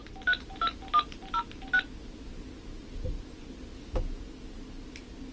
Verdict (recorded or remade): recorded